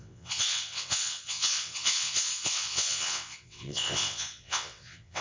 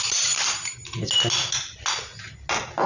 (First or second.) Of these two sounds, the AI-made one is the first